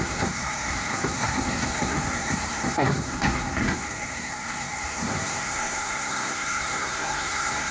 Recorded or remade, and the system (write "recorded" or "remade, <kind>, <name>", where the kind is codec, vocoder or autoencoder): remade, codec, SNAC